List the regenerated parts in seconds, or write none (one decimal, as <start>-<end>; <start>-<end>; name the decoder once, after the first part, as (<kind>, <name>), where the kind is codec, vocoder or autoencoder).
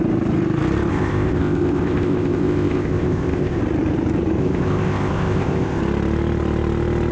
0.9-3.6 (codec, ZipCodec); 4.4-5.8